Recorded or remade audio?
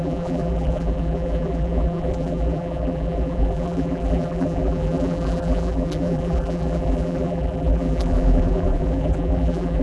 remade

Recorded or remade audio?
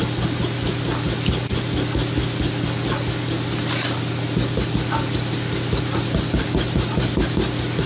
recorded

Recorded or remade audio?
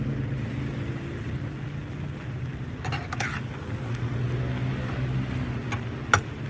recorded